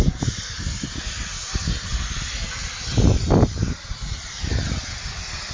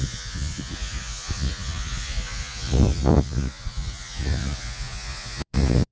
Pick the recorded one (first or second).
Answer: first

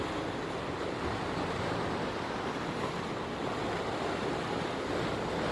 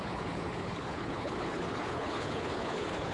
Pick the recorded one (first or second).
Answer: first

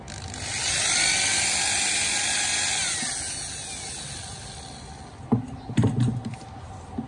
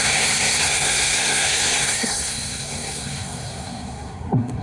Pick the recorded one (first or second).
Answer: first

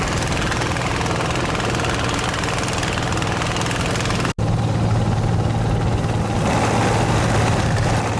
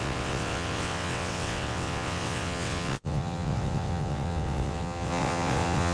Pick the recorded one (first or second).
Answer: first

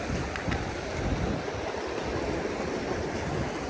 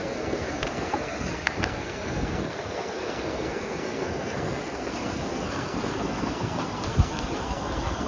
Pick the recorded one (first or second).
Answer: first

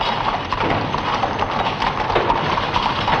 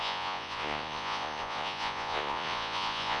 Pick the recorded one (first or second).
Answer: first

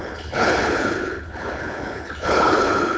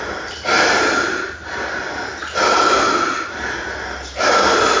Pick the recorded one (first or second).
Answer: second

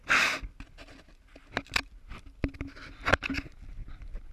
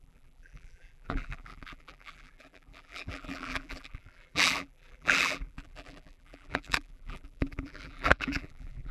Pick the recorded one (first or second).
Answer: first